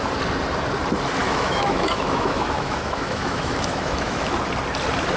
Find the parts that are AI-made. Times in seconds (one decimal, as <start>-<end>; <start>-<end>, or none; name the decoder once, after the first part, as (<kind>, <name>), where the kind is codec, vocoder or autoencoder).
1.2-4.3 (autoencoder, DAC-VAE)